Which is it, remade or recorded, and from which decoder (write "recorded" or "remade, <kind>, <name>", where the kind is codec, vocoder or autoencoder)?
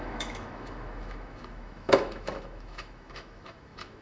remade, autoencoder, DAC-VAE